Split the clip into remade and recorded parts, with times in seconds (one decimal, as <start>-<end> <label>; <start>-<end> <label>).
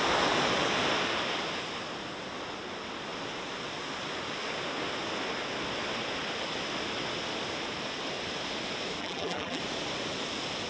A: 0.0-9.0 recorded; 9.0-9.6 remade; 9.6-10.7 recorded